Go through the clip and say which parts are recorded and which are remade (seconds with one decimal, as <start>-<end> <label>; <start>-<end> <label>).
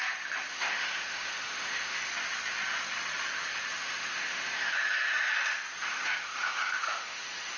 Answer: 0.0-0.5 recorded; 0.5-2.1 remade; 2.1-3.7 recorded; 3.7-5.3 remade; 5.3-5.8 recorded; 5.8-7.6 remade